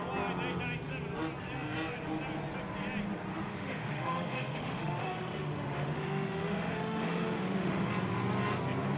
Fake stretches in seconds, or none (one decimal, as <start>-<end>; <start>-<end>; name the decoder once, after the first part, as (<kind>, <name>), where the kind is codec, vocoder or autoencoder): 3.3-7.9 (autoencoder, DAC-VAE)